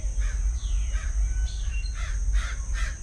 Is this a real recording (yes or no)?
yes